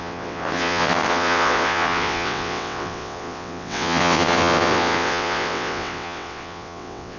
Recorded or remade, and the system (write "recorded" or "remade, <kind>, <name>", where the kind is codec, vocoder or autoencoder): remade, vocoder, WaveNeXt